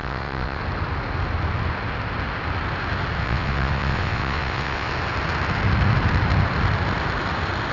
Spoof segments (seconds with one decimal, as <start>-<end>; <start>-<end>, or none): 0.0-0.6; 3.2-4.9